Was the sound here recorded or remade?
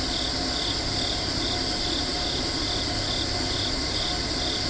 recorded